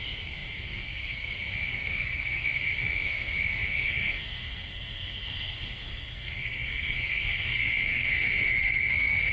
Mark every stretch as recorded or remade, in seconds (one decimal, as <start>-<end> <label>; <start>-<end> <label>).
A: 0.0-9.3 remade